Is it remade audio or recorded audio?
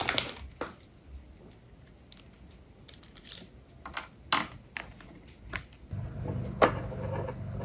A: recorded